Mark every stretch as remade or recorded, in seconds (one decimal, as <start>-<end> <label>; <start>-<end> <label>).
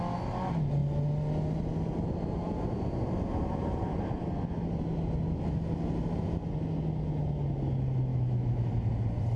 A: 0.0-8.1 recorded; 8.1-8.7 remade; 8.7-9.4 recorded